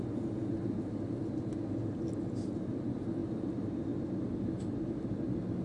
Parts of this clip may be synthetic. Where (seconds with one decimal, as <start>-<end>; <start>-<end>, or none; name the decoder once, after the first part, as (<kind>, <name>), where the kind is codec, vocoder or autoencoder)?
none